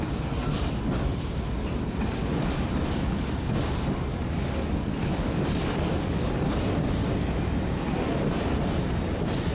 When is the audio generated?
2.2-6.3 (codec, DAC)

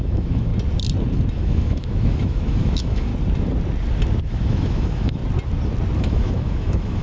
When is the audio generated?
0.0-0.5 (autoencoder, DAC-VAE); 1.3-3.1; 4.2-5.2; 6.0-7.0

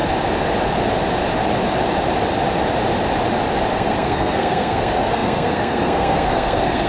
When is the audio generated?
3.7-6.9 (codec, SNAC)

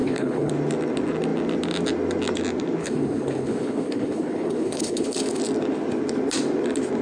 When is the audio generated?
0.0-0.5 (codec, HILCodec); 2.8-5.4

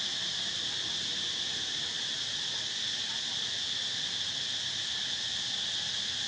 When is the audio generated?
none

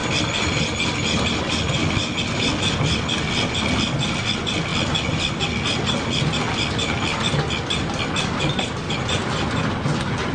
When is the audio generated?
none

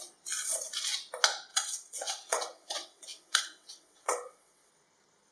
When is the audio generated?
1.5-4.7 (vocoder, WaveNeXt)